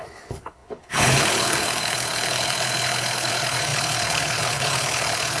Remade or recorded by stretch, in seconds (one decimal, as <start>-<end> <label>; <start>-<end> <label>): 0.0-5.4 remade